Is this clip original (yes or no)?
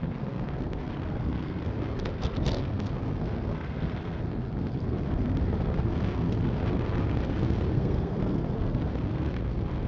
no